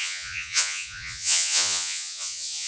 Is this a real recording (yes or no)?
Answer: no